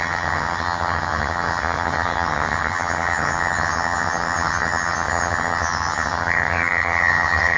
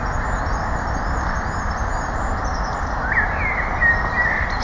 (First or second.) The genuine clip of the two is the second